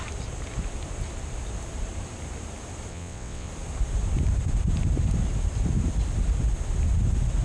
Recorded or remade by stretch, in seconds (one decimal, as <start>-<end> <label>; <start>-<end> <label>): 0.0-2.9 recorded; 2.9-3.5 remade; 3.5-7.4 recorded